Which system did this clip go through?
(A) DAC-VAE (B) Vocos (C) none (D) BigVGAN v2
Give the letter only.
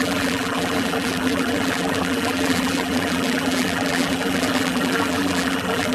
D